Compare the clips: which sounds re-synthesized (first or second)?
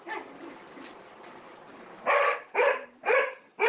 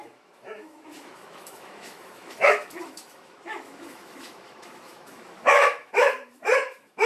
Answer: second